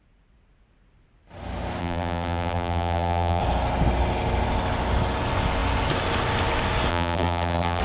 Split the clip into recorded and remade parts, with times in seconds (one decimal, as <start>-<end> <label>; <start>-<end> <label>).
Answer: 0.0-1.8 recorded; 1.8-3.4 remade; 3.4-6.9 recorded; 6.9-7.8 remade